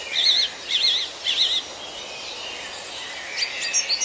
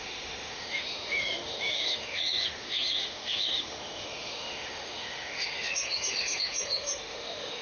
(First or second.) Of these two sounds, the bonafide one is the first